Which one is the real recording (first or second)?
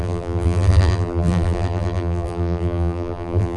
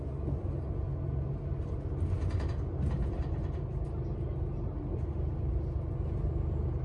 second